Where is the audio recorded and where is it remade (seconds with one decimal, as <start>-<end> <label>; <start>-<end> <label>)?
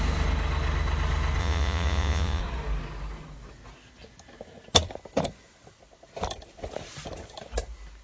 0.0-1.4 recorded; 1.4-2.4 remade; 2.4-8.0 recorded